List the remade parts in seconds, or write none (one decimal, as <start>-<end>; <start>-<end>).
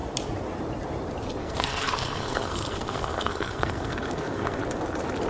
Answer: 1.4-4.6